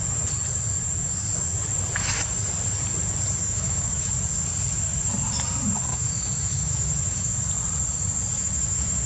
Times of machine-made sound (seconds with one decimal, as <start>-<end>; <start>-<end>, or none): 3.4-4.1; 5.9-7.3; 8.3-9.1